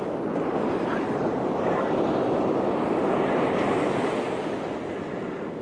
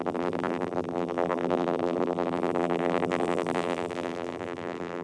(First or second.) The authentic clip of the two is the first